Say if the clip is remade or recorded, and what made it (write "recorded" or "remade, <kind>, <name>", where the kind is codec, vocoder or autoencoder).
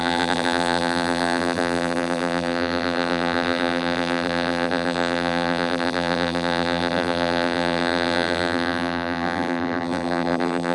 remade, vocoder, BigVGAN v2